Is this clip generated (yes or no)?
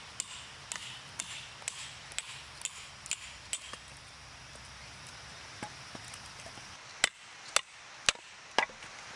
no